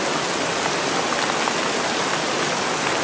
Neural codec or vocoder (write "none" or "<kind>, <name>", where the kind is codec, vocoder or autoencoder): none